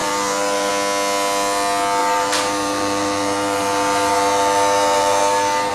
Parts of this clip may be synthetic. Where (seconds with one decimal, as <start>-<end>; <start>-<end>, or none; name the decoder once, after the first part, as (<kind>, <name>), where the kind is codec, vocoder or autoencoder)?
0.0-0.7 (vocoder, BigVGAN v2); 2.0-5.7

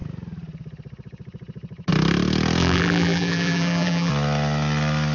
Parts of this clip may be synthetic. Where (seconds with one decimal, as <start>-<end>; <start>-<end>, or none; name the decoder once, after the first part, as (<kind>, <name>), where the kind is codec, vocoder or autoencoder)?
2.6-4.1 (vocoder, BigVGAN v2)